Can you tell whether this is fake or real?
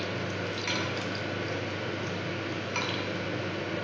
real